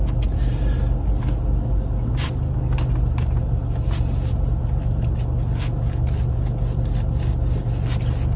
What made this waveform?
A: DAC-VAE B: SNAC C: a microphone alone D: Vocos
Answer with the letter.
C